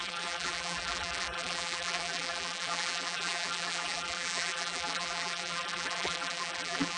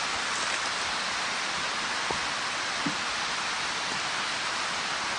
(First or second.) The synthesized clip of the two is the first